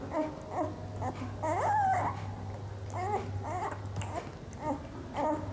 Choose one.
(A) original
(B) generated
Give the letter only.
A